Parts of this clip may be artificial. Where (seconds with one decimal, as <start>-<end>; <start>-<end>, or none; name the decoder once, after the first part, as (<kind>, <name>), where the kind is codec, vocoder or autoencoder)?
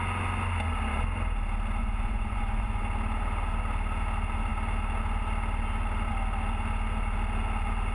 1.8-2.8 (vocoder, Vocos)